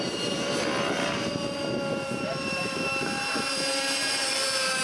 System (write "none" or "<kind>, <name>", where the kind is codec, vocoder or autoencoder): vocoder, BigVGAN v2